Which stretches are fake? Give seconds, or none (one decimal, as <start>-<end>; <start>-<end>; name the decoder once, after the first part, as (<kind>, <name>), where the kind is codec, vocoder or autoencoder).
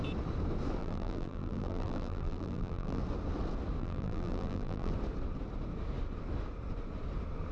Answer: 0.8-3.0 (vocoder, BigVGAN v2); 3.8-4.9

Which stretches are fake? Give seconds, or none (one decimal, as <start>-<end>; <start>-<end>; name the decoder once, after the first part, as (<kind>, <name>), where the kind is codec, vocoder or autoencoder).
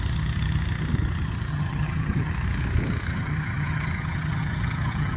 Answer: 1.5-2.3 (vocoder, HiFi-GAN); 3.1-5.2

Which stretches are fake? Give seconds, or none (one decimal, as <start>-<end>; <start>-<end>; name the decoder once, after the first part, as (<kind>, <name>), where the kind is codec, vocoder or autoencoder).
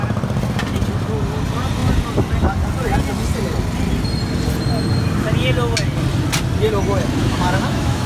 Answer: 7.2-8.1 (autoencoder, DAC-VAE)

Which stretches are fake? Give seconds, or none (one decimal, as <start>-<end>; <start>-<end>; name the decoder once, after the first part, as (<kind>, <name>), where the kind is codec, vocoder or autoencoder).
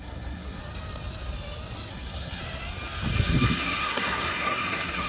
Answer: 0.0-0.6 (codec, SNAC); 1.9-2.4; 3.1-5.1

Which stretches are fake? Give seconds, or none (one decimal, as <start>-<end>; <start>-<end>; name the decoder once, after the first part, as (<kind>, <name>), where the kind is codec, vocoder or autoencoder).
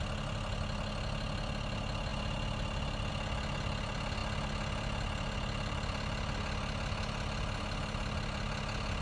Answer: none